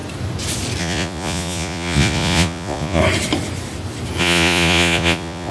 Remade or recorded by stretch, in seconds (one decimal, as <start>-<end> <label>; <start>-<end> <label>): 0.0-0.8 recorded; 0.8-3.0 remade; 3.0-4.2 recorded; 4.2-5.5 remade